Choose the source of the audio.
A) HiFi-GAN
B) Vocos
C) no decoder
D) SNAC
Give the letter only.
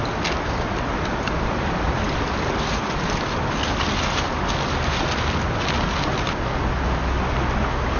C